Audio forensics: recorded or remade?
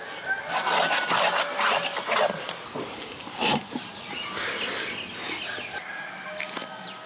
recorded